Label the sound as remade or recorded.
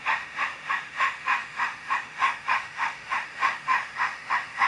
remade